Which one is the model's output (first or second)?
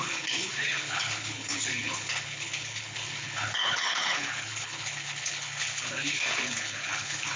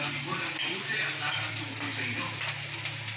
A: first